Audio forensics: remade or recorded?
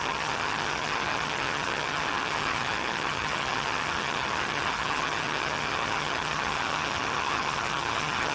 remade